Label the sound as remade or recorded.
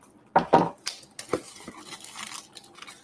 recorded